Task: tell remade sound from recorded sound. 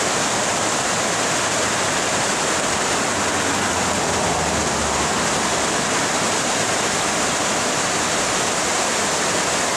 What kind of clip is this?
recorded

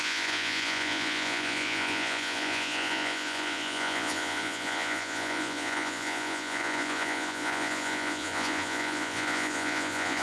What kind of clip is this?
remade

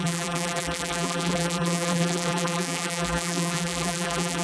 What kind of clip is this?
remade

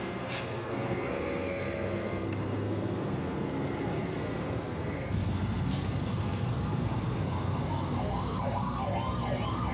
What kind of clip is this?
remade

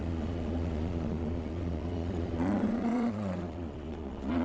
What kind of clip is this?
remade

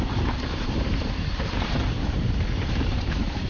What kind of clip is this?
remade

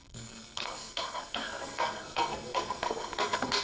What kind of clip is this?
remade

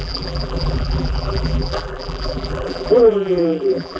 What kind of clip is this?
remade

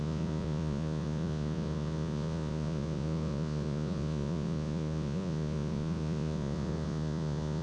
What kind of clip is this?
remade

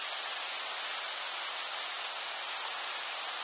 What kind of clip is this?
recorded